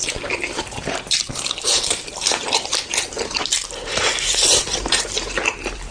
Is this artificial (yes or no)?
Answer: yes